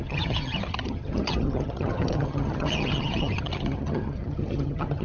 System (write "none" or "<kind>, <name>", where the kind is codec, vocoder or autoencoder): vocoder, HiFi-GAN